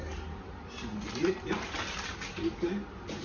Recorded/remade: recorded